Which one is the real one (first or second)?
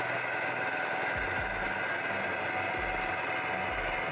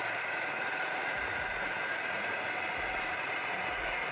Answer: first